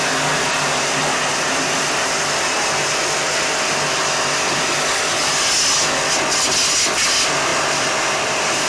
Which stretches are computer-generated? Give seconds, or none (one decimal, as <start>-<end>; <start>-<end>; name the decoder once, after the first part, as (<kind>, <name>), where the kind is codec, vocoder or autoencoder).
none